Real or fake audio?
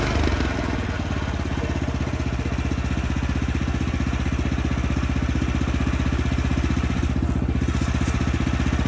real